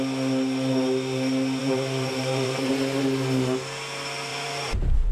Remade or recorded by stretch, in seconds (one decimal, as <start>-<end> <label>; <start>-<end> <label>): 0.0-1.6 recorded; 1.6-2.7 remade; 2.7-4.3 recorded; 4.3-5.1 remade